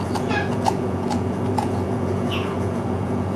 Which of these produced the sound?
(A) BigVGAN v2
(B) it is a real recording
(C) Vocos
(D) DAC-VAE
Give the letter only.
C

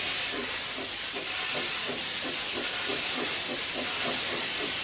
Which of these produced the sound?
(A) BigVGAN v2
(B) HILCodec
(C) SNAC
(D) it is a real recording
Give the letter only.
D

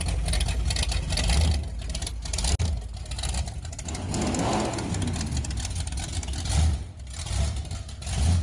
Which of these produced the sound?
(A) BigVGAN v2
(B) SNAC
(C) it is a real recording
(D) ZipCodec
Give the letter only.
C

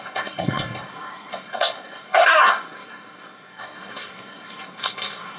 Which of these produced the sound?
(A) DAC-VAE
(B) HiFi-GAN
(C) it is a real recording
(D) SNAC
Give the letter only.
D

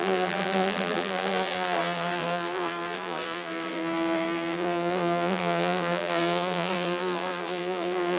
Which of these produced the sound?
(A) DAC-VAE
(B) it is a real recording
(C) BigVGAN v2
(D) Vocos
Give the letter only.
C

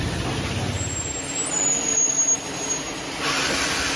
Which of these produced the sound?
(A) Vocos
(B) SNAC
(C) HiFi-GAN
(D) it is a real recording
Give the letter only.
D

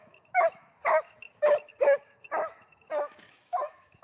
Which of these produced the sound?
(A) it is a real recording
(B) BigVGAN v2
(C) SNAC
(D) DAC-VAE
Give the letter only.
D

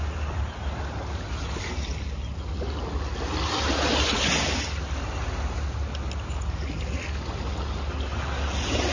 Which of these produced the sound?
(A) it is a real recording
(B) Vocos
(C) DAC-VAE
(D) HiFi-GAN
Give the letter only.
A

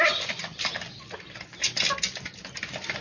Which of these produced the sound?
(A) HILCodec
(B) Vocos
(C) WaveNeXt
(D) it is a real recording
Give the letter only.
D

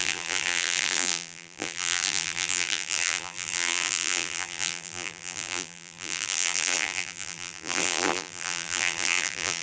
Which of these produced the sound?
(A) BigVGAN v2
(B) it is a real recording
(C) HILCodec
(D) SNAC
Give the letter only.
A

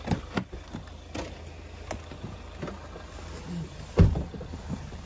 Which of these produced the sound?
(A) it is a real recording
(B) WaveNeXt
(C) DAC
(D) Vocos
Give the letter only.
A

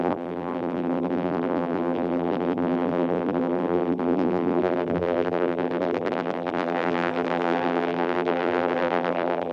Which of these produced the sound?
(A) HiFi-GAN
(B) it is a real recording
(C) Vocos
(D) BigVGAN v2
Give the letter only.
D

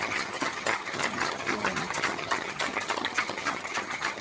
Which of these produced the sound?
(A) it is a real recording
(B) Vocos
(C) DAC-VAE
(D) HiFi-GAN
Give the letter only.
D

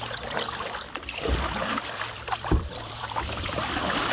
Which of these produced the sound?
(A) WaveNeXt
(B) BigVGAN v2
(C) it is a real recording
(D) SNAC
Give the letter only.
B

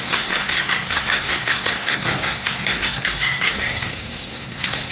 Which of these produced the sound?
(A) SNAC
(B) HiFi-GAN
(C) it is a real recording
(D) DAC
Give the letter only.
A